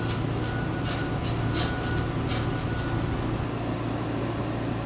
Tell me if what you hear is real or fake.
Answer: real